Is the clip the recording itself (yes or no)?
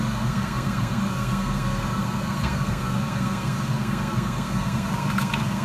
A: no